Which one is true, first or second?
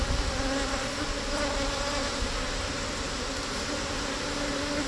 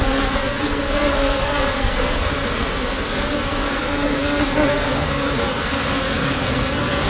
first